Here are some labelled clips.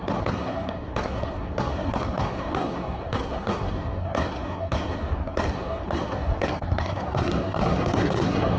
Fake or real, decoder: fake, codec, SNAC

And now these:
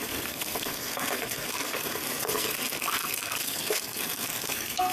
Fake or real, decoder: fake, codec, SNAC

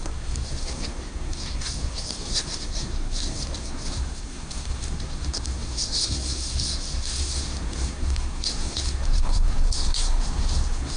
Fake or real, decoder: fake, codec, SNAC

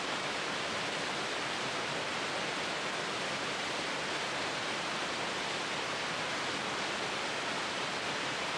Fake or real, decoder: real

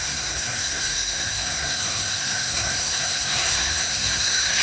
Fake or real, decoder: fake, codec, SNAC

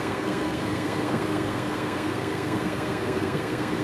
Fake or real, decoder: fake, codec, SNAC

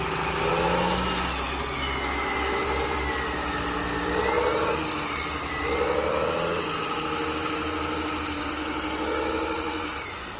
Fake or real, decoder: real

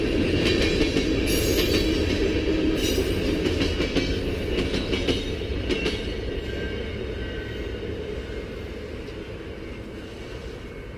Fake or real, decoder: real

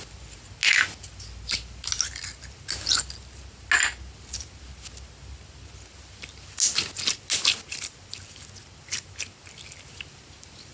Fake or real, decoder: real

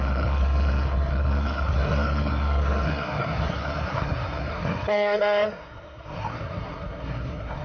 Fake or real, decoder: fake, codec, SNAC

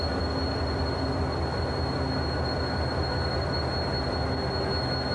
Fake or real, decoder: real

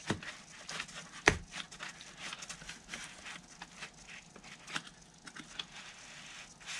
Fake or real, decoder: real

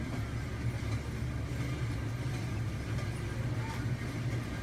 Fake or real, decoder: real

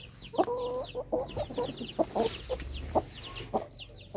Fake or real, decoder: real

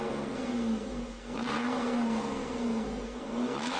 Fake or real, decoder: fake, codec, SNAC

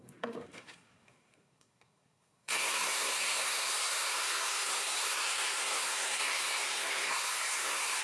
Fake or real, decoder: fake, codec, SNAC